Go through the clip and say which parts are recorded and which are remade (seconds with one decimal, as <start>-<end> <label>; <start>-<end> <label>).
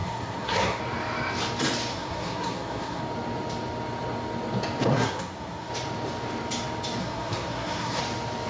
0.0-0.8 remade; 0.8-1.9 recorded; 1.9-3.0 remade; 3.0-4.9 recorded; 4.9-5.7 remade; 5.7-7.0 recorded; 7.0-8.0 remade; 8.0-8.5 recorded